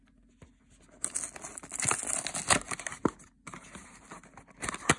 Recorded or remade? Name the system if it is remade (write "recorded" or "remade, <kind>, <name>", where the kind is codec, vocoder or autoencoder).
recorded